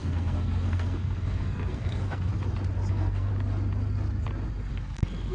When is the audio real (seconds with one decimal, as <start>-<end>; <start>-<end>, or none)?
2.3-2.9; 3.3-4.7